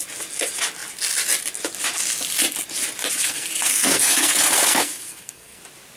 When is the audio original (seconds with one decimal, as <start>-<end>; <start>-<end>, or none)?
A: 0.0-3.2; 5.6-6.0

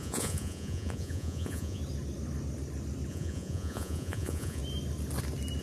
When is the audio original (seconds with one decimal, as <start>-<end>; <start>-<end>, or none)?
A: 1.8-3.1; 4.6-5.6

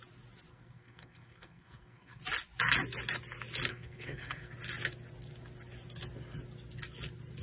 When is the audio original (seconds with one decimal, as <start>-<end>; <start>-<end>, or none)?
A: 0.0-0.5; 2.2-3.7; 4.5-7.4

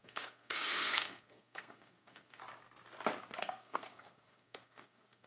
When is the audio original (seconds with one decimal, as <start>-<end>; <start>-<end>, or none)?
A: 2.4-3.4

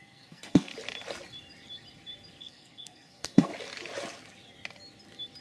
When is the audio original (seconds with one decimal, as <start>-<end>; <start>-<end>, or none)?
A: 0.7-2.4; 3.5-5.4

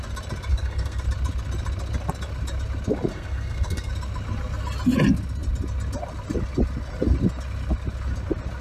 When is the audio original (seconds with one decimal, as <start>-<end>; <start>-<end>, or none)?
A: 0.0-0.5; 1.0-3.1; 3.9-8.6

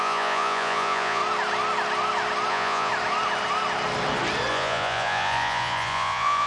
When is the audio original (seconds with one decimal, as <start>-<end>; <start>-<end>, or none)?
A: 1.2-2.5; 2.9-4.5

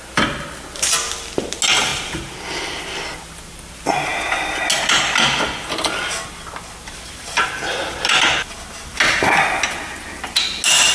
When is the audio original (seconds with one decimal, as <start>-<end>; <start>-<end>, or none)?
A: 0.0-10.9